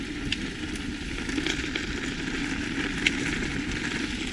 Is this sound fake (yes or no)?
no